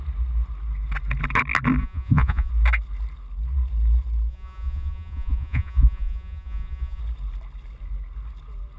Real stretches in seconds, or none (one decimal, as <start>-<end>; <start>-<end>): 0.0-1.8; 2.5-4.3; 7.0-8.8